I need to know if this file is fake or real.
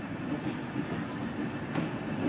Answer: real